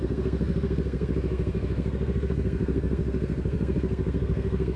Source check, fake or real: fake